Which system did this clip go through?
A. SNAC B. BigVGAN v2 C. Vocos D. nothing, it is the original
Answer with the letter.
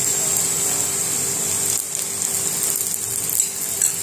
D